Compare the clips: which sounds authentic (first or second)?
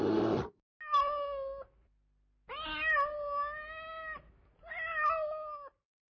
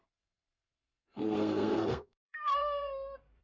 first